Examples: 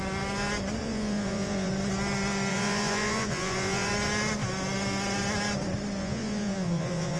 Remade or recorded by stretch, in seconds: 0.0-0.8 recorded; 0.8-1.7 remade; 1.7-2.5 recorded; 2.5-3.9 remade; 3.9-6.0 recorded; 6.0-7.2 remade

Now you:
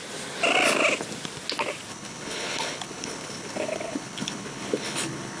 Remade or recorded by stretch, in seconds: 0.0-1.9 recorded; 1.9-5.4 remade

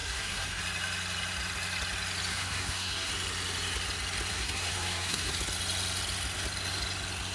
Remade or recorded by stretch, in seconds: 0.0-0.6 remade; 0.6-2.3 recorded; 2.3-3.1 remade; 3.1-4.3 recorded; 4.3-5.3 remade; 5.3-7.3 recorded

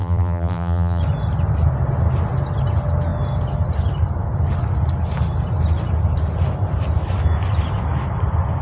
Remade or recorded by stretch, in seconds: 0.0-1.0 remade; 1.0-8.6 recorded

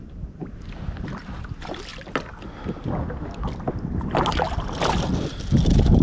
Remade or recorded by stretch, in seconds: 0.0-0.4 remade; 0.4-1.1 recorded; 1.1-1.9 remade; 1.9-4.5 recorded; 4.5-6.0 remade